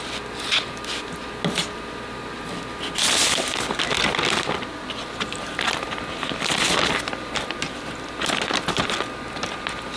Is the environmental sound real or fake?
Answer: real